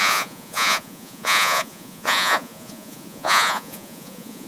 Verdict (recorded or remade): remade